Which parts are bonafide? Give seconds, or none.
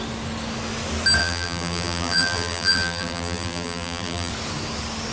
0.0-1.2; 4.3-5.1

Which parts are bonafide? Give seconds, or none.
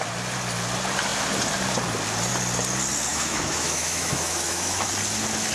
0.0-3.1; 4.9-5.5